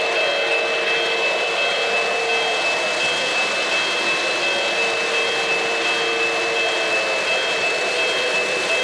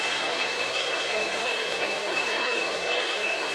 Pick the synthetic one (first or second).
second